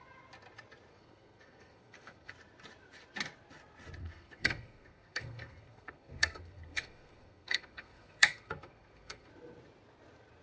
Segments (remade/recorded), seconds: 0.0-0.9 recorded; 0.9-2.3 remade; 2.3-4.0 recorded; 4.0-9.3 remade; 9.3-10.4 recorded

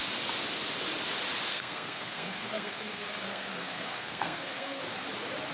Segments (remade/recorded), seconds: 0.0-1.5 recorded; 1.5-4.8 remade; 4.8-5.5 recorded

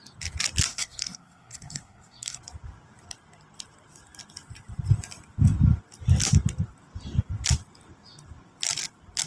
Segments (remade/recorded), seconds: 0.0-0.7 recorded; 0.7-2.4 remade; 2.4-9.3 recorded